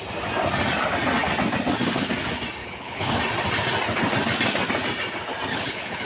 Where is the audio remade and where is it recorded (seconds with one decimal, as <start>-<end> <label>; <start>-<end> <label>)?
0.0-2.6 recorded; 2.6-3.2 remade; 3.2-5.5 recorded; 5.5-6.1 remade